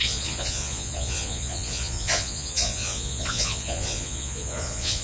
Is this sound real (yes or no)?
no